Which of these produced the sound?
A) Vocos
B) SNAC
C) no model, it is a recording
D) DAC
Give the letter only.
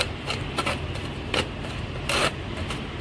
C